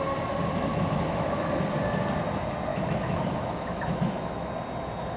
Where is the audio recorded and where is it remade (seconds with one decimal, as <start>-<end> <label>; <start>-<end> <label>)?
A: 0.0-0.7 recorded; 0.7-1.5 remade; 1.5-2.7 recorded; 2.7-4.5 remade; 4.5-5.2 recorded